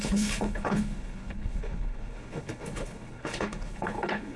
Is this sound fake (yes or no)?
yes